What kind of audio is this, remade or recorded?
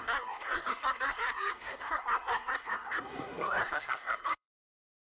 remade